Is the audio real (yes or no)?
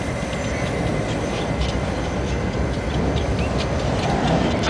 yes